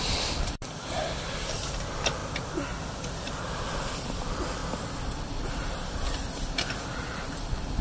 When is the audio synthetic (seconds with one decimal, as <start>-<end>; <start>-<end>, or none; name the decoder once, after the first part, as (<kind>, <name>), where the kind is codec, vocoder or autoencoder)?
0.0-2.2 (vocoder, BigVGAN v2); 3.0-4.6; 7.0-7.8